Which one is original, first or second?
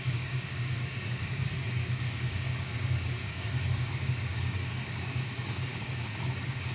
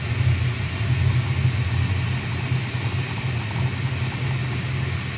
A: second